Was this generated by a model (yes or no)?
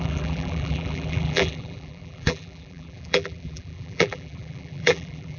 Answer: yes